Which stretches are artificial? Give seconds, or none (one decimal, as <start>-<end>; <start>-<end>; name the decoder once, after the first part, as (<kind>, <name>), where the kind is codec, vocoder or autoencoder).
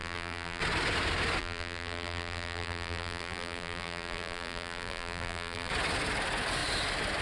0.0-0.6 (vocoder, BigVGAN v2); 1.4-5.7